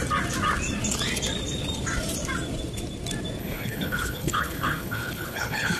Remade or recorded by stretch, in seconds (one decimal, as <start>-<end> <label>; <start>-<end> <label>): 0.0-3.4 recorded; 3.4-5.8 remade